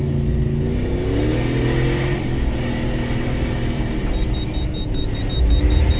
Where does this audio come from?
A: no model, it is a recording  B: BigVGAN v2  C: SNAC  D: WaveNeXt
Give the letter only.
A